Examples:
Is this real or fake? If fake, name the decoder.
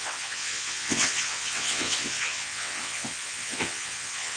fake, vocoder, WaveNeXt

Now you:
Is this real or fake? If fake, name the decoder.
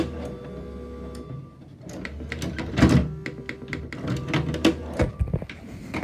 real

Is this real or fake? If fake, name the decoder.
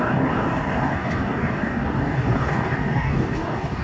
fake, codec, DAC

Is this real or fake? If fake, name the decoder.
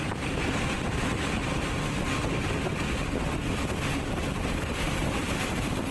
fake, vocoder, BigVGAN v2